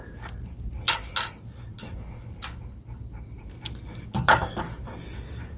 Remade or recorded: recorded